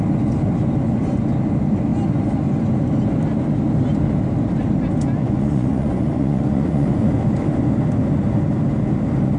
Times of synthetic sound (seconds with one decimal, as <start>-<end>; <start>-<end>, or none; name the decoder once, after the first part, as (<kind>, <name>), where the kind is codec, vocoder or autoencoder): 5.2-7.1 (vocoder, Vocos)